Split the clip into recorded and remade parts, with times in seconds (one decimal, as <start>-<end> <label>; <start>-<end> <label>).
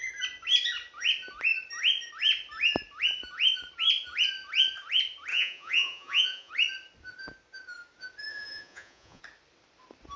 0.0-5.3 recorded; 5.3-6.5 remade; 6.5-8.3 recorded; 8.3-9.2 remade; 9.2-10.2 recorded